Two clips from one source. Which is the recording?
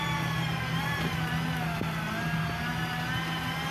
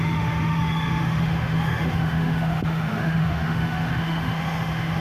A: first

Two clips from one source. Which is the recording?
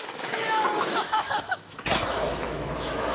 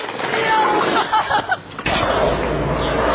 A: second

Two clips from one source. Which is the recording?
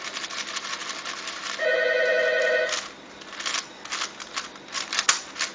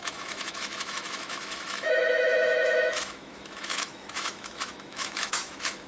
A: first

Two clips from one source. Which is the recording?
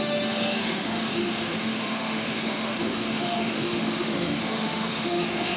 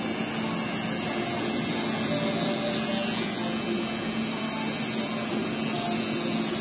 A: second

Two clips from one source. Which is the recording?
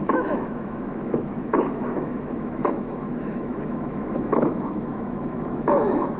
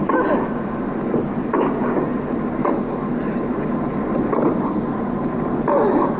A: second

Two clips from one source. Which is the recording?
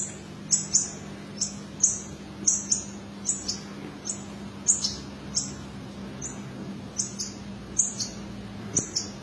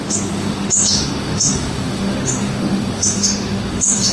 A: first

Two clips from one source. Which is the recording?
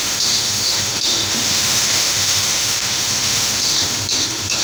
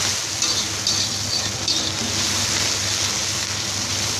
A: second